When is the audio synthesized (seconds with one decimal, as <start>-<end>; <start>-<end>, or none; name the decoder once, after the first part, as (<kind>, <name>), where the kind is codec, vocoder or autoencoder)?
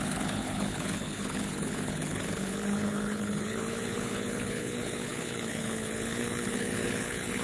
0.0-7.4 (codec, HILCodec)